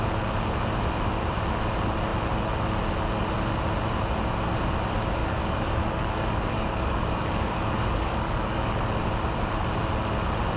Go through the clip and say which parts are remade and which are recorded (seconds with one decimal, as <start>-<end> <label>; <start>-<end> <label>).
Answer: 0.0-5.2 recorded; 5.2-9.1 remade; 9.1-10.6 recorded